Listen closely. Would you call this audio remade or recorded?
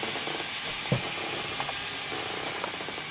recorded